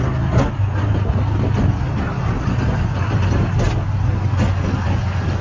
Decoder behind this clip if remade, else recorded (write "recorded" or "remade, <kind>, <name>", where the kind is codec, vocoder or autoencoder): recorded